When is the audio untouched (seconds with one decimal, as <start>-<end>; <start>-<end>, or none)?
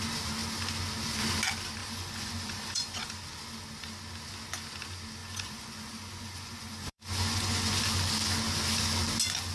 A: 0.0-1.8; 3.1-5.2; 7.8-9.5